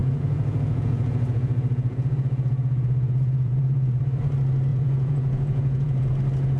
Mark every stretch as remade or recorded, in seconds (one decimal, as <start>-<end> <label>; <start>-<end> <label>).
0.0-4.0 remade; 4.0-4.7 recorded; 4.7-6.1 remade; 6.1-6.6 recorded